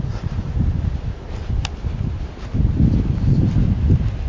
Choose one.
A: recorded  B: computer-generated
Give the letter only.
A